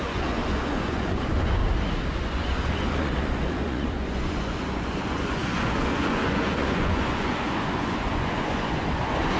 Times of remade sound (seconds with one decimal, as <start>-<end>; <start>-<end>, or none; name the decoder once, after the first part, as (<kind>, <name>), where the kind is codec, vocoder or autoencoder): 0.0-1.6 (vocoder, Vocos); 2.2-9.4